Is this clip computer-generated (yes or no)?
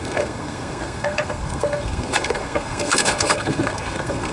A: yes